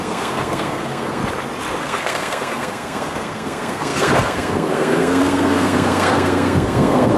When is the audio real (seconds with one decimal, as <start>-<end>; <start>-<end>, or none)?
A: 1.2-1.8